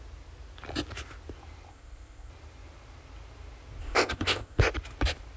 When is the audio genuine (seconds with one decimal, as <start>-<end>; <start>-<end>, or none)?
0.0-1.7; 2.3-3.8; 4.6-5.4